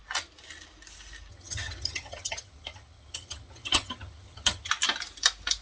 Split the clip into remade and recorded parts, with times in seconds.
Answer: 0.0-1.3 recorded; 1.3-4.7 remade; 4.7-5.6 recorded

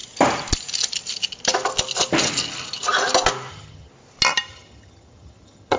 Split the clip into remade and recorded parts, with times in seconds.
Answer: 0.0-3.5 recorded; 3.5-3.9 remade; 3.9-4.5 recorded; 4.5-5.8 remade

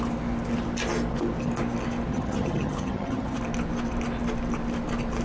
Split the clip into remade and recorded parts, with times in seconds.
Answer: 0.0-2.1 recorded; 2.1-3.4 remade; 3.4-5.2 recorded

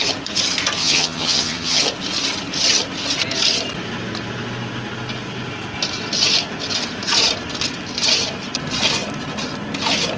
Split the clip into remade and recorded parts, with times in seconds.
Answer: 0.0-0.8 recorded; 0.8-1.8 remade; 1.8-10.2 recorded

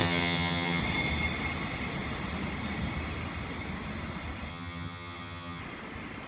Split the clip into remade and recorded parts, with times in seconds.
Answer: 0.0-0.8 remade; 0.8-4.5 recorded; 4.5-5.6 remade; 5.6-6.3 recorded

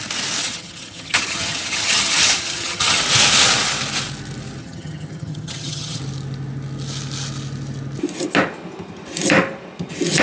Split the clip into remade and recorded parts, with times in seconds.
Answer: 0.0-0.4 recorded; 0.4-3.0 remade; 3.0-4.6 recorded; 4.6-6.0 remade; 6.0-10.2 recorded